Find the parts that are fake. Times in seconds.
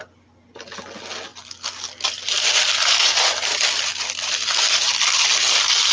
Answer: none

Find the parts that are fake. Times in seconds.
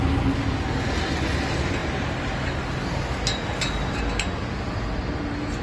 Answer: none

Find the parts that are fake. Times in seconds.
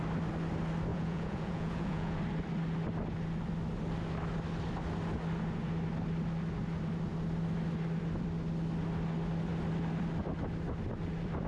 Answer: 0.9-2.2 (vocoder, Vocos)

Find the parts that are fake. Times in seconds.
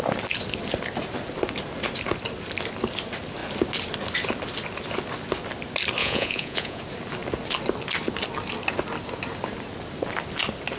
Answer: 6.0-6.8 (vocoder, Vocos)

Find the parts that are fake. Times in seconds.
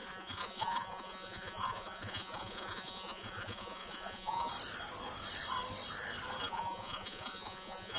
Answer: 0.0-4.5 (vocoder, Vocos); 6.4-8.0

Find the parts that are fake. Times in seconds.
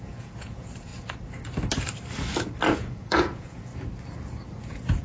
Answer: 0.0-0.9 (vocoder, Vocos); 2.7-3.7; 4.6-5.0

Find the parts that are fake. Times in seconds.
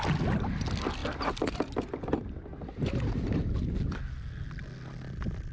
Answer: none